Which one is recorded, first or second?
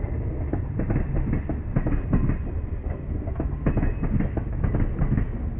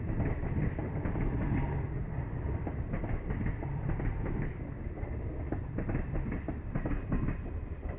first